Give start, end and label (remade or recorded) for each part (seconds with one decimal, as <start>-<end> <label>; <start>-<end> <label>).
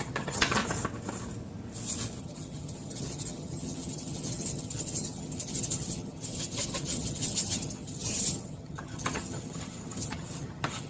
0.0-0.6 remade; 0.6-2.2 recorded; 2.2-10.9 remade